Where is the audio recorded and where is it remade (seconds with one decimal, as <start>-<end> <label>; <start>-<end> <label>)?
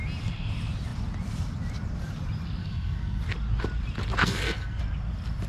0.0-2.6 recorded; 2.6-3.2 remade; 3.2-4.2 recorded; 4.2-4.8 remade; 4.8-5.5 recorded